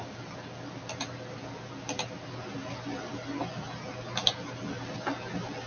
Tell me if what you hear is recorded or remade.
recorded